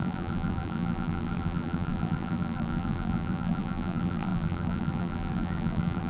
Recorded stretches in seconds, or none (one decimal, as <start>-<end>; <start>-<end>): none